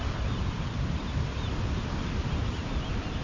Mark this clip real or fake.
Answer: real